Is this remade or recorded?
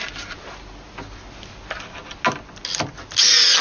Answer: recorded